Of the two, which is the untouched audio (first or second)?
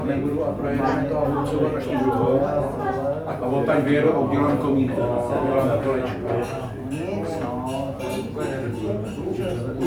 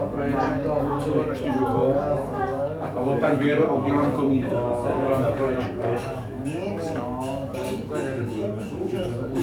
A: first